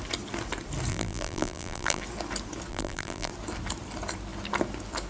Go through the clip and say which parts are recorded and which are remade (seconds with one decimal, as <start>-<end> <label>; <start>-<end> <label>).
0.0-0.9 recorded; 0.9-2.0 remade; 2.0-2.7 recorded; 2.7-3.3 remade; 3.3-5.1 recorded